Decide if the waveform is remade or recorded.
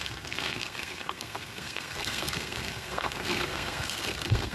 remade